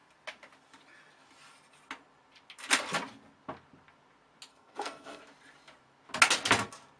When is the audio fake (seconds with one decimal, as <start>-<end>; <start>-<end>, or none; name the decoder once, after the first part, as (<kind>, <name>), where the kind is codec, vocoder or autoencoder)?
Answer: 4.5-5.2 (codec, SNAC)